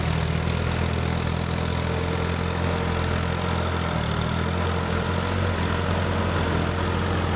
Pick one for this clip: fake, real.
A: real